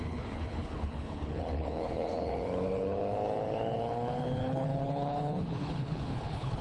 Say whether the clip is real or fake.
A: fake